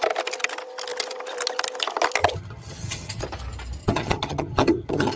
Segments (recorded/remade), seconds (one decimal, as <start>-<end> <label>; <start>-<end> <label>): 0.0-2.2 recorded; 2.2-3.2 remade; 3.2-3.8 recorded; 3.8-5.2 remade